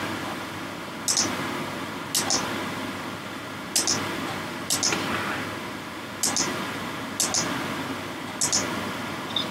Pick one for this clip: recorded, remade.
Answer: recorded